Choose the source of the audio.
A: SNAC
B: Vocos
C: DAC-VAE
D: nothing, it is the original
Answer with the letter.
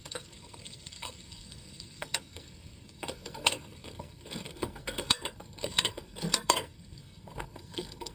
A